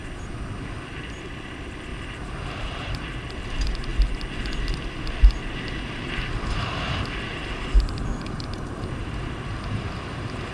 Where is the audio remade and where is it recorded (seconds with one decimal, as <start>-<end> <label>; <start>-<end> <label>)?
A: 0.0-0.9 recorded; 0.9-1.9 remade; 1.9-2.5 recorded; 2.5-3.9 remade; 3.9-4.8 recorded; 4.8-10.5 remade